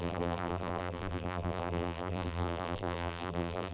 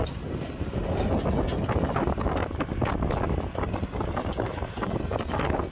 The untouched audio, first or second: second